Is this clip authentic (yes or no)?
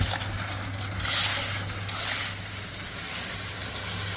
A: yes